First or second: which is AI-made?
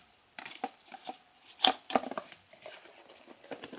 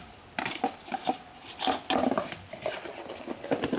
first